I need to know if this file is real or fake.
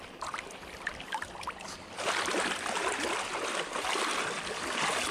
real